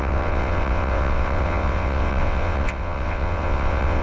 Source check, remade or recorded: remade